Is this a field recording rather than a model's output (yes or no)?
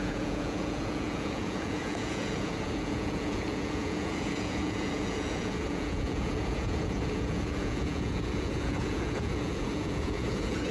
no